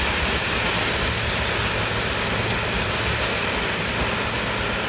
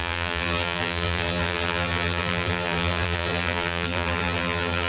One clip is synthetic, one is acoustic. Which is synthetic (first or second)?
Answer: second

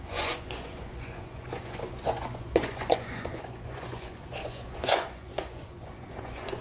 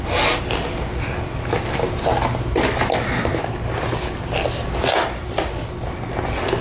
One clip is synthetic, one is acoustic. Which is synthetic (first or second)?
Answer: first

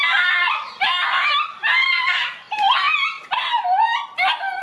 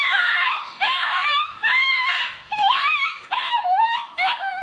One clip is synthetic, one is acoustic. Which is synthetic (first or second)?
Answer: second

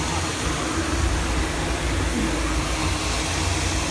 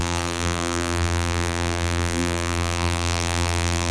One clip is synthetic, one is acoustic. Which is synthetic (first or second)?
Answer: second